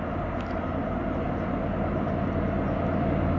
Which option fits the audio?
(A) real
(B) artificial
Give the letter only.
A